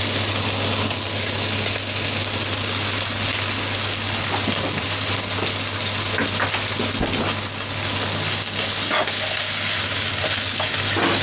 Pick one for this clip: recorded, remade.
recorded